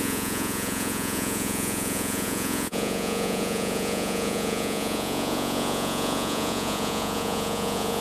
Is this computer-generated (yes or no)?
yes